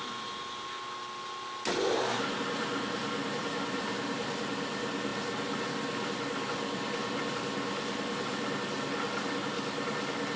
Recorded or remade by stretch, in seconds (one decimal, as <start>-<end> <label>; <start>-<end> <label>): 0.0-10.4 recorded